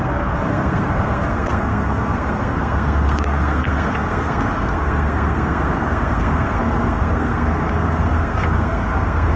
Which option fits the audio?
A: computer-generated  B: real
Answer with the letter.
A